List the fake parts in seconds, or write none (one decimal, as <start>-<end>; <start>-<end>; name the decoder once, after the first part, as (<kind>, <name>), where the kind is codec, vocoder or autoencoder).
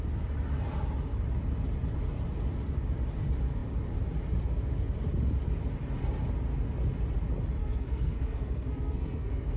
7.6-9.6 (codec, SNAC)